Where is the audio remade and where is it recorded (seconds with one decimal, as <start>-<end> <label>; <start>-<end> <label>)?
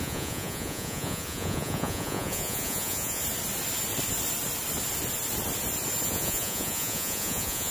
0.0-3.2 remade; 3.2-6.1 recorded; 6.1-7.7 remade